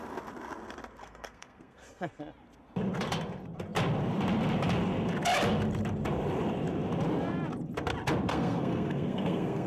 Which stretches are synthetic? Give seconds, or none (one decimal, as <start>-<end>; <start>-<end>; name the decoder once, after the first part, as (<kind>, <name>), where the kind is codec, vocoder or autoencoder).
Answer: 1.0-2.2 (codec, SNAC); 8.3-9.7